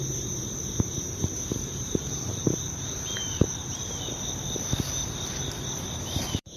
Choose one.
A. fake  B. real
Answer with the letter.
A